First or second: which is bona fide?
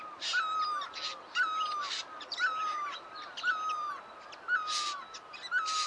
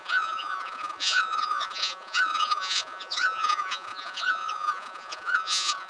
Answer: first